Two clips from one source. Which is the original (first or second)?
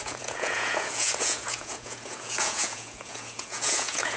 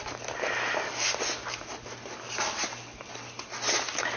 second